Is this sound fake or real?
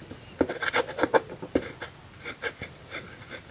real